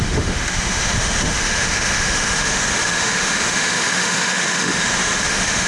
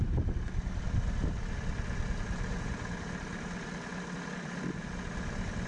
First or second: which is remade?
first